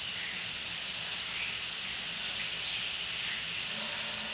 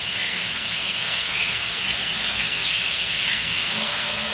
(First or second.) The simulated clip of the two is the second